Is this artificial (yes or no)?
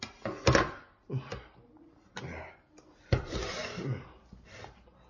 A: no